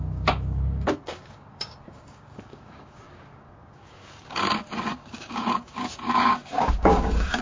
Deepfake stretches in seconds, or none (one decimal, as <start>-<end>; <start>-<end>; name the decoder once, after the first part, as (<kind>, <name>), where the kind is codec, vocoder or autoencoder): 0.0-7.4 (codec, DAC)